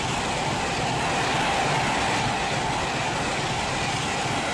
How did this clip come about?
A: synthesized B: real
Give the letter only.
B